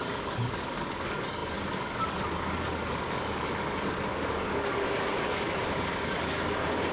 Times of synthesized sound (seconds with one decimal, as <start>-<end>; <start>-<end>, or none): 0.0-6.9